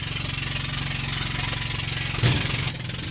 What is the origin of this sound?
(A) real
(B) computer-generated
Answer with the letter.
A